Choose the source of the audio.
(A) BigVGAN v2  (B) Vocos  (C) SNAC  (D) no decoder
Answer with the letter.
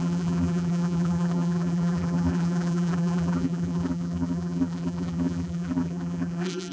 A